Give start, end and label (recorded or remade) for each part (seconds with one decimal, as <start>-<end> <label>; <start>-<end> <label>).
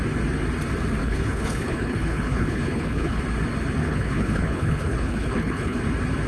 0.0-1.0 recorded; 1.0-3.2 remade; 3.2-3.8 recorded; 3.8-5.8 remade; 5.8-6.3 recorded